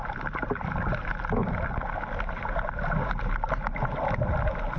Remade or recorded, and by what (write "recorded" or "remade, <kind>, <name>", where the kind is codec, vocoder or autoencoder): recorded